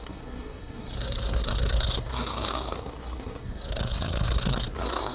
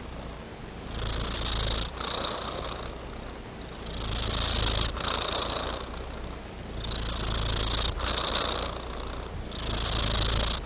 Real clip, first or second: second